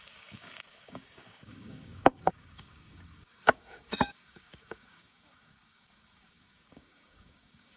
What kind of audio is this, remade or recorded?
remade